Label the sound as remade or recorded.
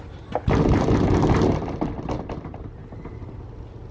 recorded